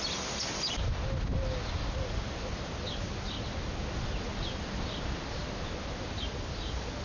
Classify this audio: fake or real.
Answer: real